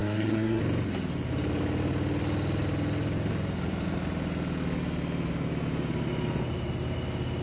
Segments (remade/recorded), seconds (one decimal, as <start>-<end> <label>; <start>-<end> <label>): 0.0-0.6 remade; 0.6-7.4 recorded